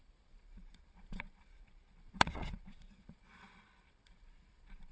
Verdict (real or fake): fake